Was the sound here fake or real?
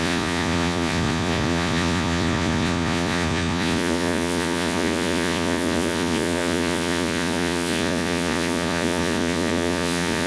fake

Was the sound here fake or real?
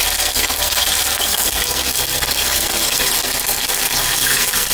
fake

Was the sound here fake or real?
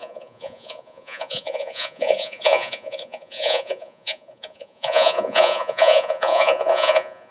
fake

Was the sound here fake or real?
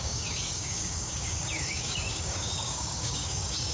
fake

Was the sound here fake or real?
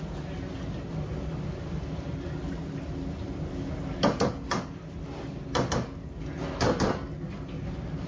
real